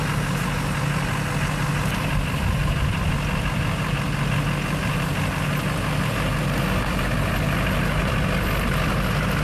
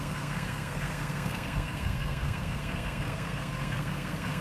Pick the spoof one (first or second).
second